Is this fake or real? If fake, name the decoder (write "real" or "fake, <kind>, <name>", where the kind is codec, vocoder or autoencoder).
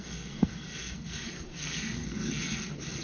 fake, codec, SNAC